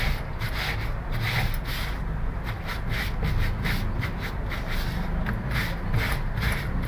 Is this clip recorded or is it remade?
recorded